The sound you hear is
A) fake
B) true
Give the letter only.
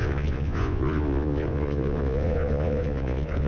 A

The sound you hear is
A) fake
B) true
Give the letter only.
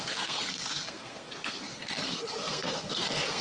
A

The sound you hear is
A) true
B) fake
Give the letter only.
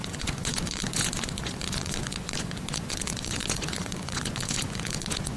B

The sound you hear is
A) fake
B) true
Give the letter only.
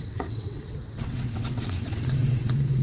A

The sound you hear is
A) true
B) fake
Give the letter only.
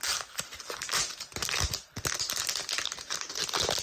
A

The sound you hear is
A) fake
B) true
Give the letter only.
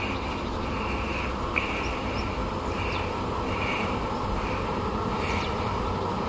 B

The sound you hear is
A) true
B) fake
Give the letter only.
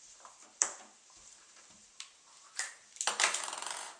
B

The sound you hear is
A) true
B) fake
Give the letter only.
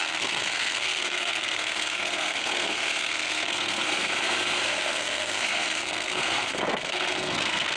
B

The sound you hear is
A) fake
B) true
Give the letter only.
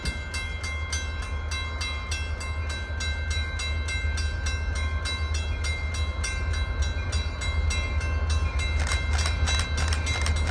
B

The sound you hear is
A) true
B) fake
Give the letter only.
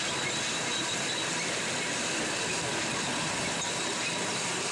A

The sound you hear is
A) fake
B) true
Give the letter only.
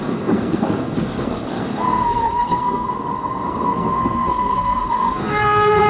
A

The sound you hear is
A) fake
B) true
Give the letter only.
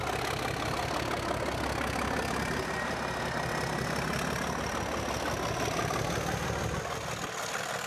B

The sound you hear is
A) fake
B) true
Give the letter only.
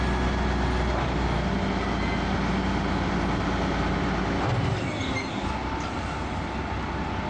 B